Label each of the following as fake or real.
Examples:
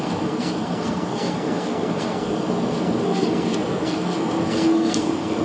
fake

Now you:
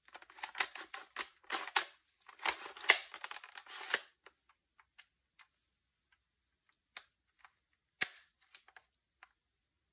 real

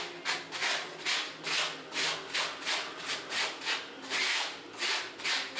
real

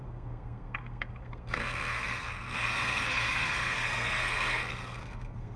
fake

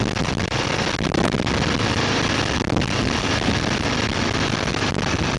real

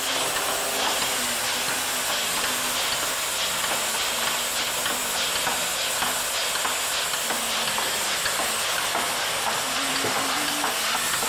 real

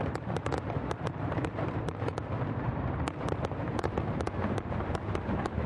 fake